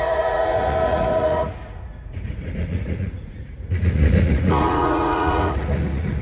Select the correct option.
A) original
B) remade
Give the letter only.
B